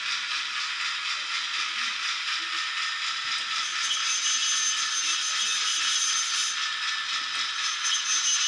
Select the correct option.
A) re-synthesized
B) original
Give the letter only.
B